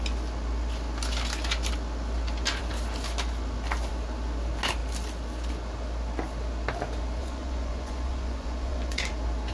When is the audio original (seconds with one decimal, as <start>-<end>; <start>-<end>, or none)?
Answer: 0.0-7.2; 9.1-9.5